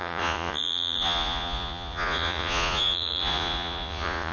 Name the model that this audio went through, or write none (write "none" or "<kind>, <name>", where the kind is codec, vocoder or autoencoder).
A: vocoder, Vocos